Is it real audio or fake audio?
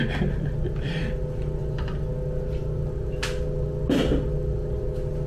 real